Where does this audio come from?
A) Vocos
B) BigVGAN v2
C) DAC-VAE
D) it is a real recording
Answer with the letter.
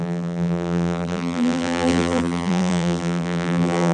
B